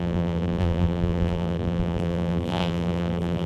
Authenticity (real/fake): fake